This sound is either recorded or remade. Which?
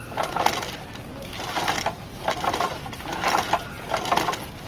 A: recorded